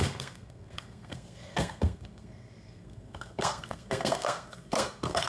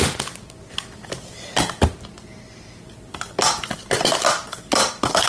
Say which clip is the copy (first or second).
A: first